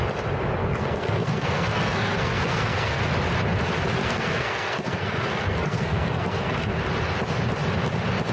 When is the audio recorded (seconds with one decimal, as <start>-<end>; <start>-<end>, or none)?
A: 0.0-0.6; 3.0-4.0; 6.8-8.3